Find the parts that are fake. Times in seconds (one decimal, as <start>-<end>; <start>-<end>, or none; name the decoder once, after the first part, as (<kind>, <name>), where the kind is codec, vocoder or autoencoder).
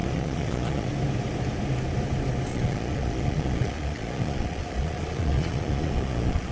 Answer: 0.0-0.9 (vocoder, Vocos); 2.5-6.5